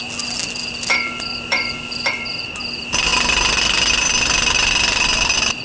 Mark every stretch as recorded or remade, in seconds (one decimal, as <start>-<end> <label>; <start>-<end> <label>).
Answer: 0.0-5.6 recorded